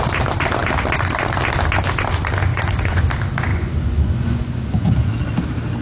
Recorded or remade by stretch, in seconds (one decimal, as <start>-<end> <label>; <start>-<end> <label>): 0.0-2.5 recorded; 2.5-3.1 remade; 3.1-3.5 recorded; 3.5-5.1 remade; 5.1-5.8 recorded

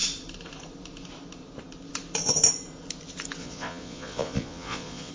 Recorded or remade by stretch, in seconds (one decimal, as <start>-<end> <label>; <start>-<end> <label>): 0.0-3.4 recorded; 3.4-5.1 remade

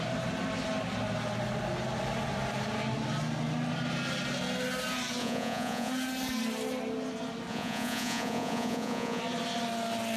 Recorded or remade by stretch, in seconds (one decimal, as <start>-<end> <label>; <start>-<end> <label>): 0.0-5.2 recorded; 5.2-5.9 remade; 5.9-7.5 recorded; 7.5-9.2 remade; 9.2-10.2 recorded

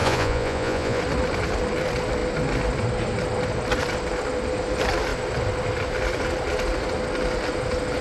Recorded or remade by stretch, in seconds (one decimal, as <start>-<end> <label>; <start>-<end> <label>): 0.0-1.0 remade; 1.0-8.0 recorded

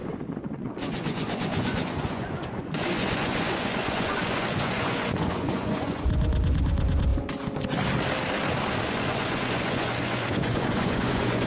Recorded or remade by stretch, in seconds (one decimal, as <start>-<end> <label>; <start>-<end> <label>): 0.0-7.1 remade; 7.1-8.9 recorded; 8.9-11.5 remade

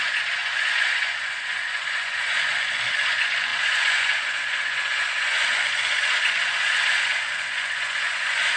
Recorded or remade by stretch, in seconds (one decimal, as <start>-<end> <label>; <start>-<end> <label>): 0.0-8.6 remade

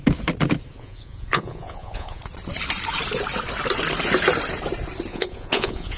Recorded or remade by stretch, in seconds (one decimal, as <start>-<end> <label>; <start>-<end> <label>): 0.0-0.7 recorded; 0.7-2.2 remade; 2.2-5.1 recorded; 5.1-6.0 remade

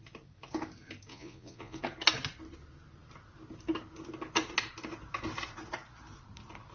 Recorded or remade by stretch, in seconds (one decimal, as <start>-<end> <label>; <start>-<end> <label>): 0.0-1.1 recorded; 1.1-1.8 remade; 1.8-6.7 recorded